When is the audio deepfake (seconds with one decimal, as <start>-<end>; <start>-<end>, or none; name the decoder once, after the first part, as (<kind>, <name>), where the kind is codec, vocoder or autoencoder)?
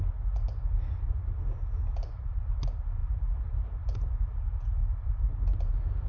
none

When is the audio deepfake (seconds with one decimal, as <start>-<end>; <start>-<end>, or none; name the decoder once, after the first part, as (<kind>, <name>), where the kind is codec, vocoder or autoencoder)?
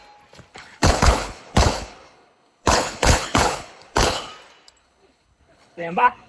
0.5-4.3 (codec, HILCodec); 4.8-6.3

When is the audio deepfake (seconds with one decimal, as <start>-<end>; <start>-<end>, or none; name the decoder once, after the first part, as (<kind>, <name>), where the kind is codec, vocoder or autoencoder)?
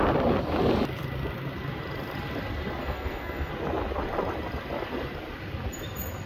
2.8-3.5 (codec, SNAC)